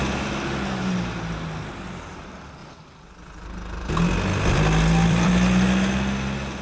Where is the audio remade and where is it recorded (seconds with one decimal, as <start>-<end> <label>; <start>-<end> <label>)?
0.0-2.6 recorded; 2.6-3.9 remade; 3.9-4.3 recorded; 4.3-5.3 remade; 5.3-6.6 recorded